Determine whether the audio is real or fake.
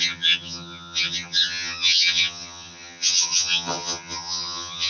fake